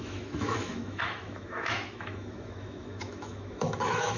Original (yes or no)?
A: no